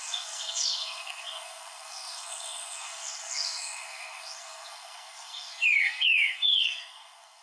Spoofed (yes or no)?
yes